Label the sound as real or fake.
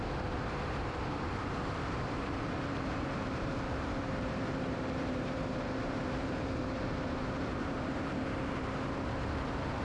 fake